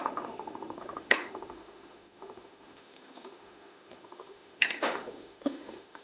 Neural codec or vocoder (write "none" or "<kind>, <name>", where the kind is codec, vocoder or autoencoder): autoencoder, DAC-VAE